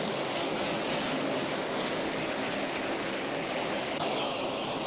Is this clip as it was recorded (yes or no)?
no